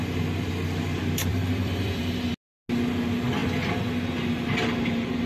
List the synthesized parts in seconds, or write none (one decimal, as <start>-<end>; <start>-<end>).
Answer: 1.3-2.3